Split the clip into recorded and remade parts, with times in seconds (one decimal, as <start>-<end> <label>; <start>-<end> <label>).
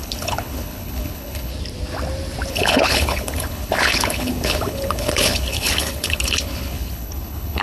0.0-1.5 remade; 1.5-2.5 recorded; 2.5-7.6 remade